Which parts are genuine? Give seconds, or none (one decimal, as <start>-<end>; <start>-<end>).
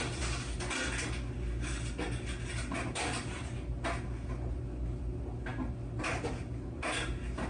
0.0-7.5